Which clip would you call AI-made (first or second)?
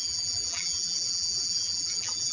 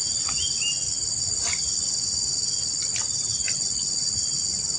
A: first